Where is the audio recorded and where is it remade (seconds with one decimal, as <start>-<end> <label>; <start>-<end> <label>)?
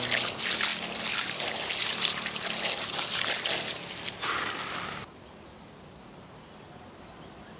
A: 0.0-7.6 recorded